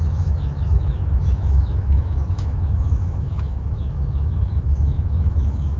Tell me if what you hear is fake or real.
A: fake